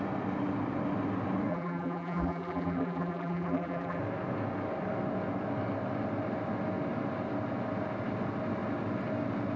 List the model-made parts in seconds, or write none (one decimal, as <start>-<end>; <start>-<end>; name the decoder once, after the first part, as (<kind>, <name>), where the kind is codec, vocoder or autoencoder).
1.5-4.0 (vocoder, BigVGAN v2)